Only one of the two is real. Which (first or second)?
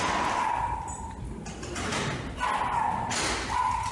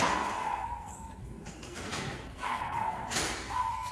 first